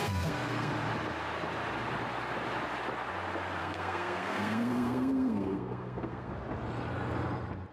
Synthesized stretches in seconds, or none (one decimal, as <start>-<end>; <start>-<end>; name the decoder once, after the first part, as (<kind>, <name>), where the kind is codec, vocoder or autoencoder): 0.0-0.7 (codec, SNAC); 3.6-6.3